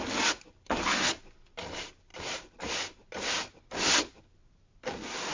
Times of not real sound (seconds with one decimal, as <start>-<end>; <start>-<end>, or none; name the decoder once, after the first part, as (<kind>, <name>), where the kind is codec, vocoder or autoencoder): none